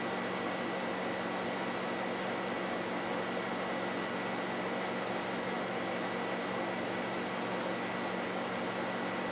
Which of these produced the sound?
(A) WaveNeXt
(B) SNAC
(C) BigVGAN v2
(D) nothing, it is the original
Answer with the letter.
D